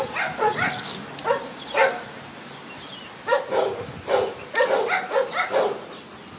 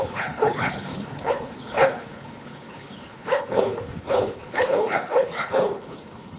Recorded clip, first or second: first